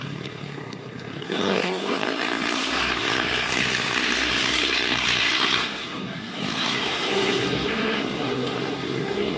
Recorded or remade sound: remade